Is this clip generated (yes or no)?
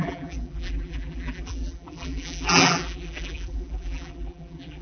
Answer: yes